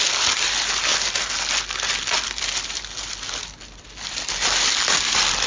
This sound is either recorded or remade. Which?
recorded